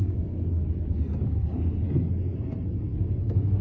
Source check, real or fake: fake